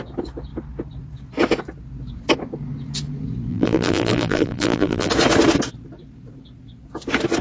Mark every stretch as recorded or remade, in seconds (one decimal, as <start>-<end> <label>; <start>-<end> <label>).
0.0-3.5 recorded; 3.5-5.1 remade; 5.1-7.4 recorded